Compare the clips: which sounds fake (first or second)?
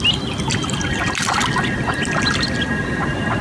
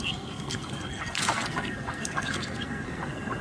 second